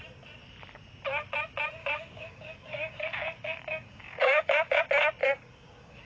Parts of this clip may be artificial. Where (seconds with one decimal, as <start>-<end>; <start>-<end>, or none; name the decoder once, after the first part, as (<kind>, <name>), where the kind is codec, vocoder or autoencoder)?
1.8-4.8 (codec, DAC); 5.2-6.0